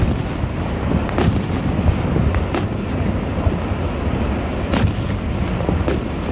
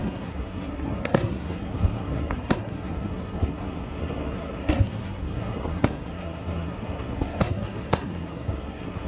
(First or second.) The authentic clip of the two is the first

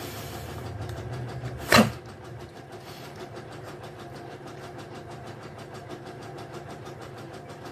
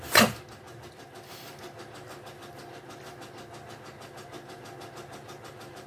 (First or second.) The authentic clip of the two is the second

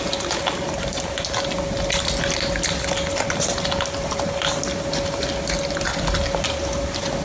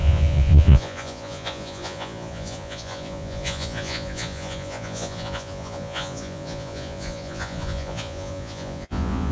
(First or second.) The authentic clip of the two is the first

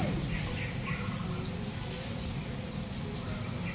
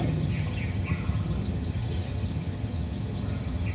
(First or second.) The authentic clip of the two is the first